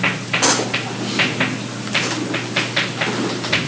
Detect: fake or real real